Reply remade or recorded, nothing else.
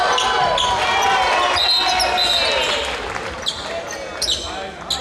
recorded